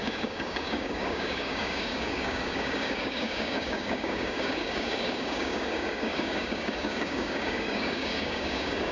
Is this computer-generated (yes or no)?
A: yes